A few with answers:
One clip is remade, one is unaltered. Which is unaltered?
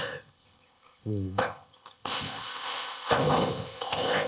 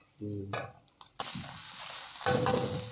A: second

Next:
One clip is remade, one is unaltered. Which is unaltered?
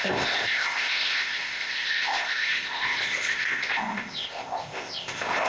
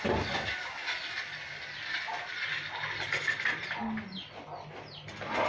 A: second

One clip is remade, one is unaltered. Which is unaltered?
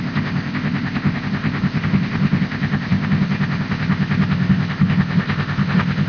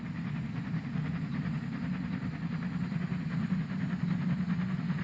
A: second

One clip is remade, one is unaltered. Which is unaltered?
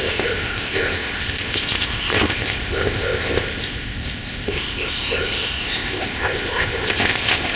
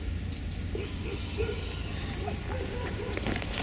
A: second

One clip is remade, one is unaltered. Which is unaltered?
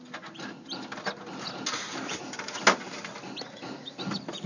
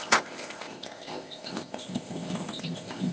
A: first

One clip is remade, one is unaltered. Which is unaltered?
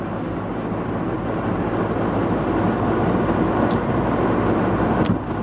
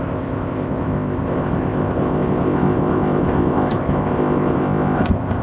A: first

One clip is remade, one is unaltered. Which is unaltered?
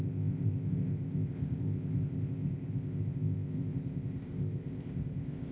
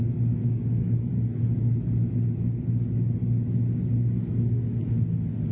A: second